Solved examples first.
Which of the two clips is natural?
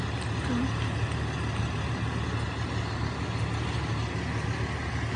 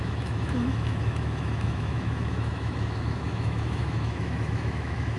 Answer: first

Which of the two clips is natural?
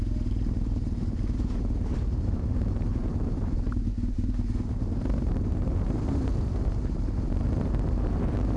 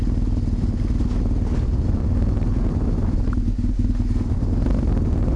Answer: second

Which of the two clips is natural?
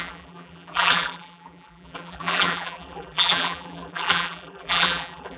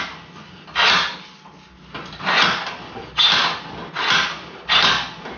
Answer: second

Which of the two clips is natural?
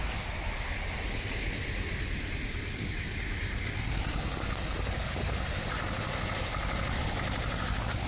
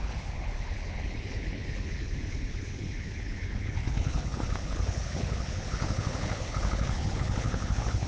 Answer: first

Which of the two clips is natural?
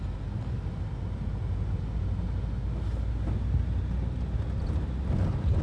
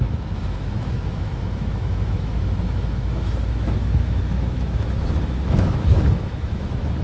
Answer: first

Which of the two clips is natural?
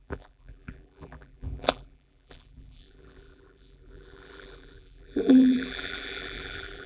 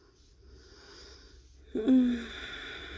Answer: second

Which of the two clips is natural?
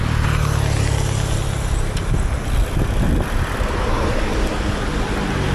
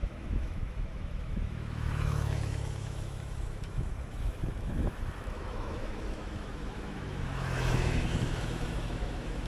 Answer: first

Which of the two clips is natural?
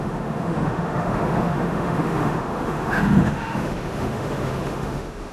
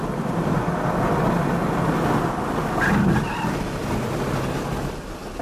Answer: second